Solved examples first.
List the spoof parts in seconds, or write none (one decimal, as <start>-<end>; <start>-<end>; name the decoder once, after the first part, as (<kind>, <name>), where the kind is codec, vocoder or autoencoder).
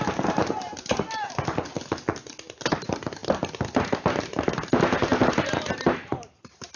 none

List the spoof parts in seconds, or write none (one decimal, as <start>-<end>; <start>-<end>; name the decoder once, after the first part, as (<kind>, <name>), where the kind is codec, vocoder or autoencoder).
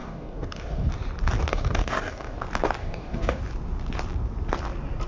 0.0-0.9 (codec, DAC); 1.5-2.4; 2.8-3.4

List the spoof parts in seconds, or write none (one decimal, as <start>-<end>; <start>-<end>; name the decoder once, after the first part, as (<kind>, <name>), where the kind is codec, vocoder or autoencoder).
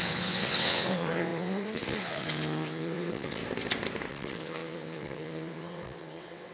0.0-3.4 (vocoder, WaveNeXt); 4.1-6.5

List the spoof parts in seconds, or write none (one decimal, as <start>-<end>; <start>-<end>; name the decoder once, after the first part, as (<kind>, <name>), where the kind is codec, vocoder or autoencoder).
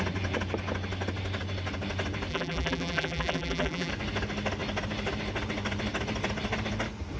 2.3-3.9 (vocoder, BigVGAN v2)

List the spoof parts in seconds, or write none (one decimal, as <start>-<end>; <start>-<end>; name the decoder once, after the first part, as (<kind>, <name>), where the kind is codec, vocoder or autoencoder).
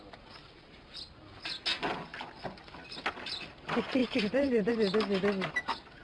4.0-4.7 (vocoder, BigVGAN v2)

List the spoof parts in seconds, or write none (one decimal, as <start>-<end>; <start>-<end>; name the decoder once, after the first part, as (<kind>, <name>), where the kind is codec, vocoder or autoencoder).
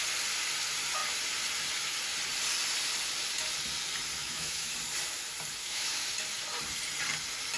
4.2-4.7 (autoencoder, DAC-VAE); 5.6-6.1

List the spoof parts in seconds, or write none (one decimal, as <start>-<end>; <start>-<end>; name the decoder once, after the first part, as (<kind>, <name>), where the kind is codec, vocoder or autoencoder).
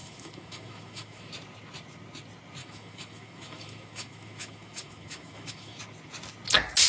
0.0-1.3 (autoencoder, DAC-VAE); 2.6-5.8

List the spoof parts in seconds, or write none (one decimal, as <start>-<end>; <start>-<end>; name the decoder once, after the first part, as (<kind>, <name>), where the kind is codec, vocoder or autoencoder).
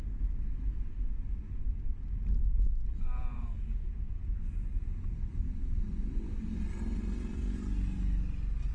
3.3-5.8 (vocoder, Vocos)